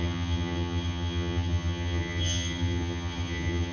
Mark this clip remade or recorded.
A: remade